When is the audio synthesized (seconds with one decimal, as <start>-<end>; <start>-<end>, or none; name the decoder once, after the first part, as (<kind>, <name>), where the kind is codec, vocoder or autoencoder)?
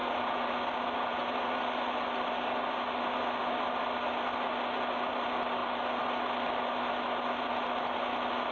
0.0-0.5 (vocoder, BigVGAN v2)